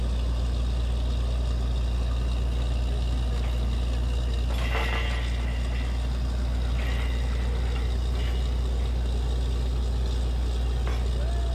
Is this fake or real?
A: real